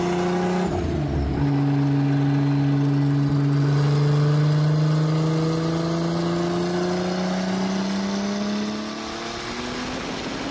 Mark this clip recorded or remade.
recorded